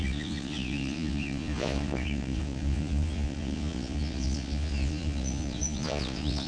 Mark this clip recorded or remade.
remade